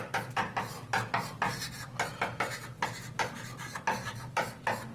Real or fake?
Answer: real